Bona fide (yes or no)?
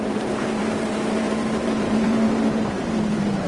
no